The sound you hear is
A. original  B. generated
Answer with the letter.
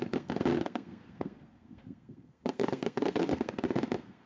B